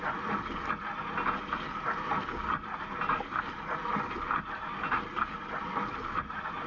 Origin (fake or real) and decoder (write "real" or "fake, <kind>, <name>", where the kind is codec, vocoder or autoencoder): real